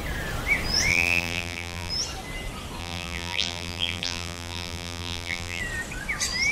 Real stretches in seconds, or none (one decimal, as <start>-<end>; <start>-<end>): 0.0-0.9; 1.9-2.8; 5.6-6.5